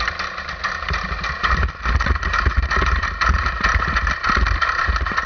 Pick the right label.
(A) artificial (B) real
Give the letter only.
B